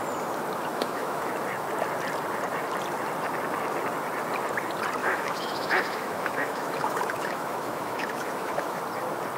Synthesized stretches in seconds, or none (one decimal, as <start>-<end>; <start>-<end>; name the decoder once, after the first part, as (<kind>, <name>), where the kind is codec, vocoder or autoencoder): 0.7-1.3 (autoencoder, DAC-VAE); 5.0-8.8